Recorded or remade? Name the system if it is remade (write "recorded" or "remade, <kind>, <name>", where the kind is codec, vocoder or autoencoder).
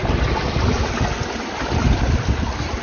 recorded